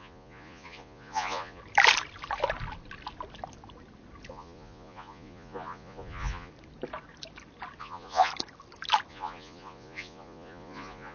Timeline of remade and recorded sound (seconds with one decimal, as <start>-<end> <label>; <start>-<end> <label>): 0.0-1.6 remade; 1.6-4.3 recorded; 4.3-6.5 remade; 6.5-7.8 recorded; 7.8-8.3 remade; 8.3-9.1 recorded; 9.1-11.1 remade